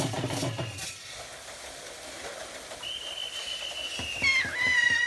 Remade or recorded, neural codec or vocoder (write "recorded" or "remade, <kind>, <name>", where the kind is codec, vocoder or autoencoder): recorded